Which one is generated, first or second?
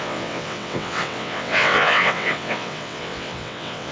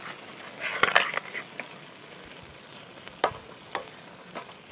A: first